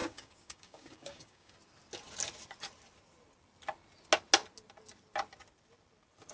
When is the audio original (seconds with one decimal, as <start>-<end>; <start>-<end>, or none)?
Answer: 1.5-6.3